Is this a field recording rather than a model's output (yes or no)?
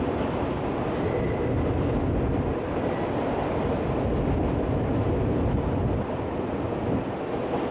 yes